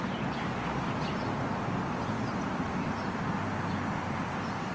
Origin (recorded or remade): recorded